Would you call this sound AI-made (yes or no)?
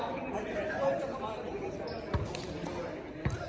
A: no